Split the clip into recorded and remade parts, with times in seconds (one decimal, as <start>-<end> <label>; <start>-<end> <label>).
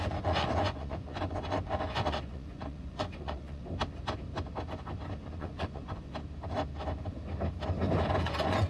0.0-3.6 remade; 3.6-5.2 recorded; 5.2-6.1 remade; 6.1-8.2 recorded; 8.2-8.7 remade